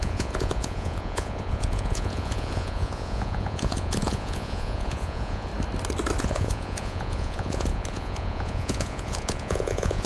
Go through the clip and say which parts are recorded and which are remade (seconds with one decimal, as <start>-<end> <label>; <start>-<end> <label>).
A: 0.0-5.5 remade; 5.5-6.2 recorded; 6.2-10.1 remade